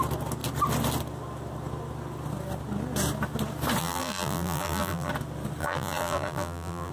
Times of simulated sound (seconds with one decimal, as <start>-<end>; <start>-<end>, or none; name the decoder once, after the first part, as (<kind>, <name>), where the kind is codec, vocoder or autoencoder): 3.8-5.1 (vocoder, BigVGAN v2); 5.6-6.9